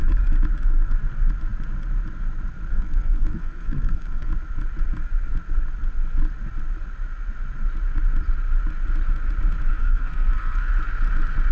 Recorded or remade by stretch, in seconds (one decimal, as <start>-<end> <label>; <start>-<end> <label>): 0.0-2.7 recorded; 2.7-4.3 remade; 4.3-9.7 recorded; 9.7-10.7 remade; 10.7-11.5 recorded